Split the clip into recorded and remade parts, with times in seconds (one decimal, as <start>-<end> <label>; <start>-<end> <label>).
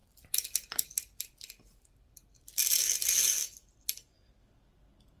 0.0-3.4 recorded; 3.4-4.4 remade; 4.4-5.2 recorded